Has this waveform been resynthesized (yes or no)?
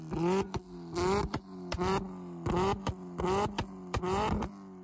no